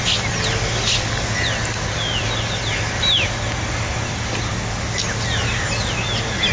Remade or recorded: recorded